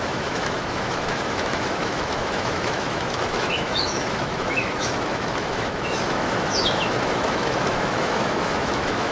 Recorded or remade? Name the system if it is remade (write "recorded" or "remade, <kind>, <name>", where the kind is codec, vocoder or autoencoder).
remade, autoencoder, DAC-VAE